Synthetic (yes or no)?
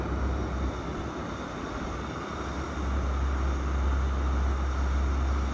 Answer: no